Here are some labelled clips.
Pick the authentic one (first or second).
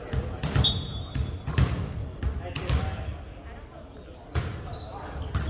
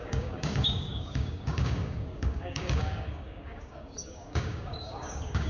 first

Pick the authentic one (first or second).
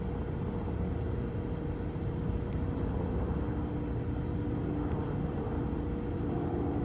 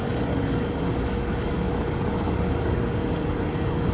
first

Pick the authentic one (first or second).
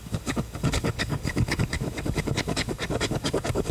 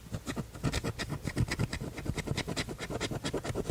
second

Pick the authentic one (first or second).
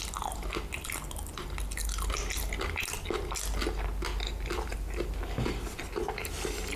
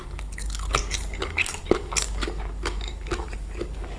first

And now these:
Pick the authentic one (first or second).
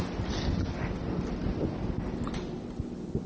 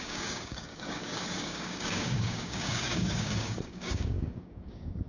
first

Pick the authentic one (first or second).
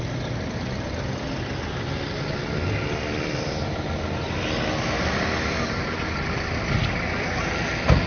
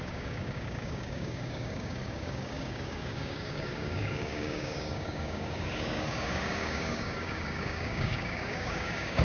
first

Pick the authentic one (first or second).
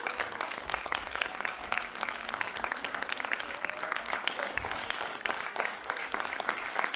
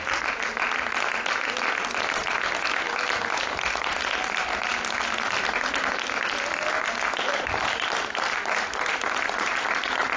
second